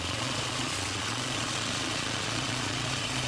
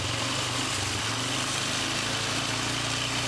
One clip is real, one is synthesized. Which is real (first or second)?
second